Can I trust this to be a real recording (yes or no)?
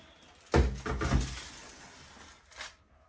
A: yes